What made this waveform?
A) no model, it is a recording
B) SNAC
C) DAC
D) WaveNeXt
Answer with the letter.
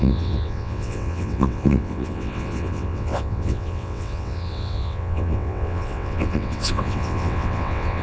D